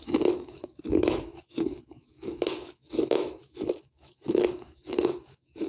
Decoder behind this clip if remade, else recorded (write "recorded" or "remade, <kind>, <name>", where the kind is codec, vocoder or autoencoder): remade, autoencoder, DAC-VAE